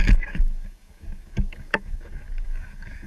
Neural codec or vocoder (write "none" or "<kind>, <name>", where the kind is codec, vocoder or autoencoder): codec, DAC